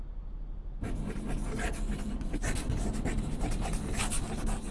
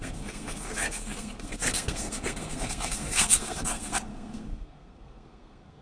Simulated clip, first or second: second